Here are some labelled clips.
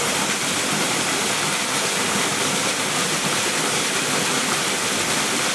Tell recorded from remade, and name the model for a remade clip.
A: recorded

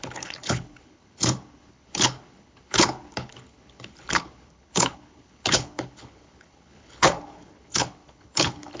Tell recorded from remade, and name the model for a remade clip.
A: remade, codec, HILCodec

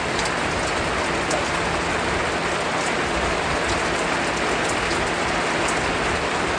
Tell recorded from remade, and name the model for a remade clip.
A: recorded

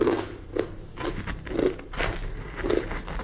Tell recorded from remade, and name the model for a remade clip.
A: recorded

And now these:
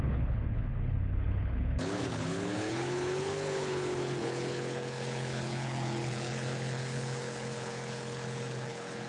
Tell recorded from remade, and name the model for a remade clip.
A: remade, codec, HILCodec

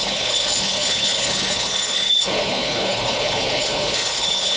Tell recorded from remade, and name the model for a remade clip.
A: remade, codec, HILCodec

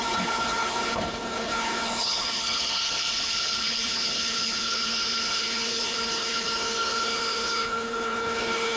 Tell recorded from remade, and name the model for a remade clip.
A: remade, codec, HILCodec